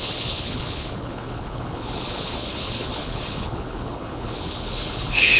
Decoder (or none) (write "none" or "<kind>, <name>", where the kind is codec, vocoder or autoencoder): codec, HILCodec